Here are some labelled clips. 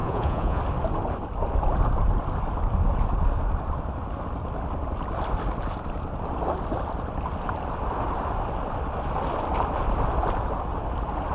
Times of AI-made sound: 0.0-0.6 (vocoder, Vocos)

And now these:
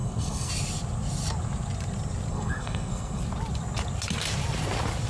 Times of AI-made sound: 0.0-0.5 (codec, SNAC); 2.3-3.2

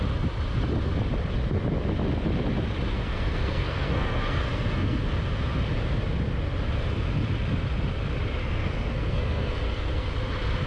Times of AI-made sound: 2.9-5.1 (codec, SNAC); 8.4-10.1

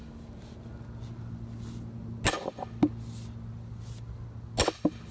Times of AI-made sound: none

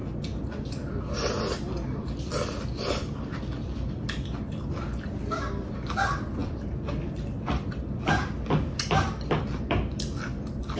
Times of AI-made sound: 6.4-7.8 (vocoder, BigVGAN v2)

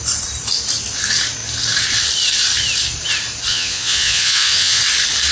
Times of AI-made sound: 3.5-4.8 (vocoder, Vocos)